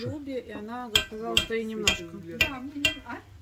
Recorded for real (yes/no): yes